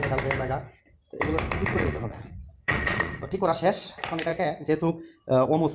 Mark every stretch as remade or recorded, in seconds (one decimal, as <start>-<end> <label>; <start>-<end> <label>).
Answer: 0.0-1.6 recorded; 1.6-3.4 remade; 3.4-4.3 recorded; 4.3-4.9 remade; 4.9-5.7 recorded